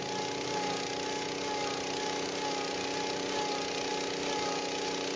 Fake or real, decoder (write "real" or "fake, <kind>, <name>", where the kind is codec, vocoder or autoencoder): real